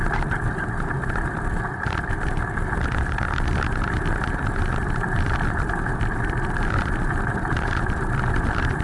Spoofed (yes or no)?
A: no